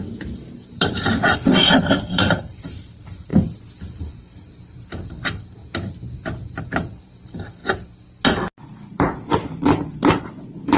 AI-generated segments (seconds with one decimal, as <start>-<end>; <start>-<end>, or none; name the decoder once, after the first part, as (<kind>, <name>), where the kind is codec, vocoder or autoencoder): 0.0-3.3 (vocoder, BigVGAN v2); 4.0-5.6; 6.6-7.6; 8.6-10.8

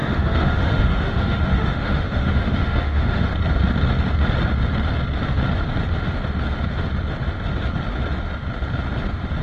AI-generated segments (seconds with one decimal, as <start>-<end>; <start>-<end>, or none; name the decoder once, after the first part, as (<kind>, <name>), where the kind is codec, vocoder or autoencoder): 0.0-3.3 (autoencoder, DAC-VAE)

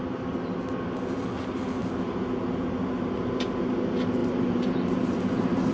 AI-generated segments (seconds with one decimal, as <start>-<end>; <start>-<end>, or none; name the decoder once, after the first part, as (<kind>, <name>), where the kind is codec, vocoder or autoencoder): 4.2-5.7 (vocoder, BigVGAN v2)

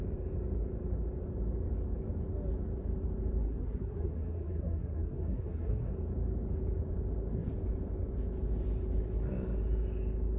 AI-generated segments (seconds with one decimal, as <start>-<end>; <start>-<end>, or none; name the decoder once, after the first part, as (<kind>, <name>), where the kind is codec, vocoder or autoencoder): 3.4-5.9 (codec, SNAC)

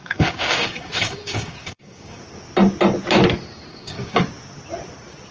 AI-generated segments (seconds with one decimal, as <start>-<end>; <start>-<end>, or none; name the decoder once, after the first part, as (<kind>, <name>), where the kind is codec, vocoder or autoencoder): 0.0-2.2 (codec, DAC); 3.7-4.2